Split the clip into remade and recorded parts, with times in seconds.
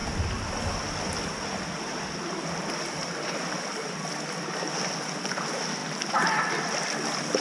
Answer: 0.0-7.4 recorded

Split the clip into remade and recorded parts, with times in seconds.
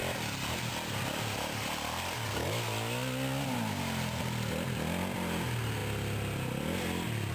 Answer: 0.0-7.3 recorded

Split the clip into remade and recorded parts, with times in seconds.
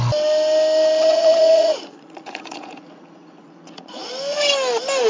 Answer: 0.0-1.1 recorded; 1.1-4.1 remade; 4.1-5.1 recorded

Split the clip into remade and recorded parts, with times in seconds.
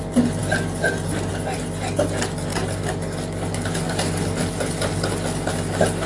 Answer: 0.0-6.1 recorded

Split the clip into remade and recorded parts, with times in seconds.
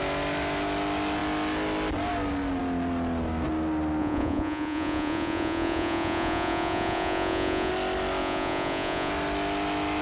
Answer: 0.0-4.0 recorded; 4.0-7.7 remade; 7.7-8.2 recorded; 8.2-9.1 remade; 9.1-10.0 recorded